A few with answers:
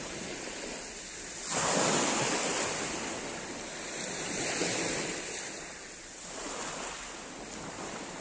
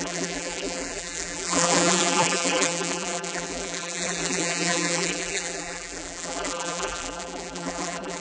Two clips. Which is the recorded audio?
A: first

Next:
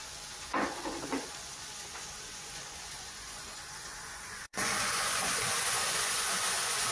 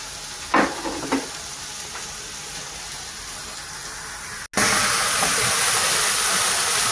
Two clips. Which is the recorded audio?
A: second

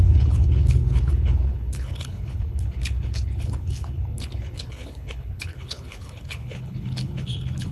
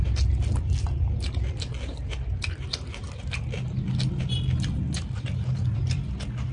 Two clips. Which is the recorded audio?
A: second